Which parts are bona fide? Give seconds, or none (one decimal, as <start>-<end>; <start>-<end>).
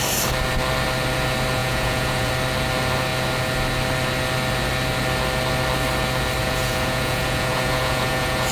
0.0-1.6; 2.3-6.4